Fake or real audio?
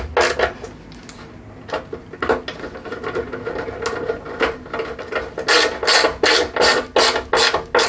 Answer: real